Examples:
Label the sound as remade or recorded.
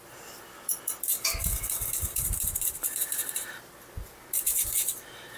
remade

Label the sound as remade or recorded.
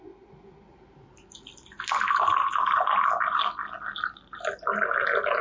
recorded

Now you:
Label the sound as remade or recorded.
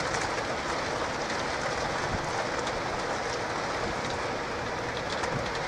recorded